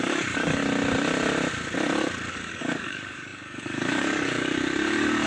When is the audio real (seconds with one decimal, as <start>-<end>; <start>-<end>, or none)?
0.6-2.3